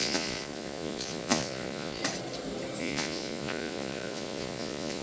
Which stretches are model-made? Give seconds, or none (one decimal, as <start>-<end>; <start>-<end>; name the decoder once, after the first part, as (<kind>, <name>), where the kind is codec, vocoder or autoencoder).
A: 0.0-2.0 (vocoder, Vocos); 2.8-5.0